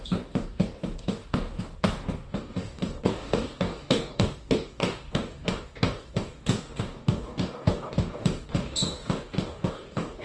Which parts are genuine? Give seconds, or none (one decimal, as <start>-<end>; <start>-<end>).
none